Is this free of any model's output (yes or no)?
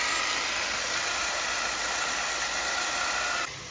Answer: yes